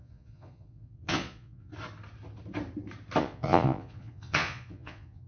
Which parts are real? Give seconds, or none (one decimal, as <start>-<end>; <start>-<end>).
1.7-3.2